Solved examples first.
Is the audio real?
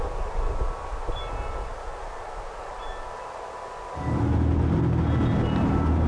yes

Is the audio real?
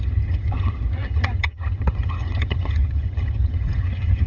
no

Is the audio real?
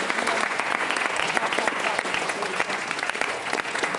no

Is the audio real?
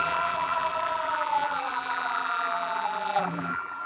no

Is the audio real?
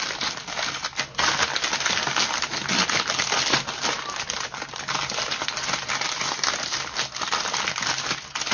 yes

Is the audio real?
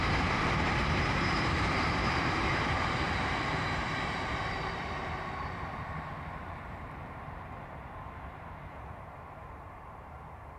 no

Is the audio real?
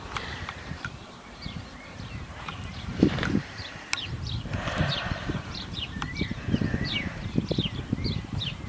no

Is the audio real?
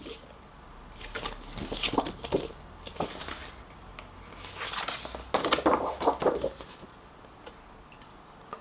yes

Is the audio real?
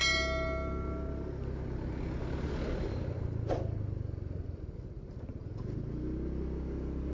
yes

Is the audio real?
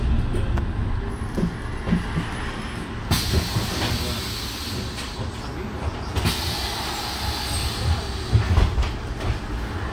yes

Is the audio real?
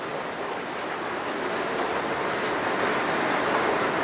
yes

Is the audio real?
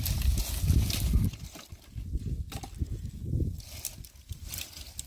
yes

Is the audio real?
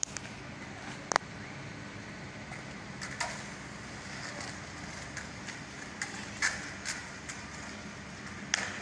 yes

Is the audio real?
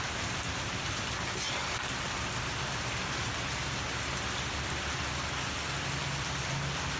yes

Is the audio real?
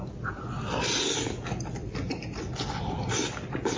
yes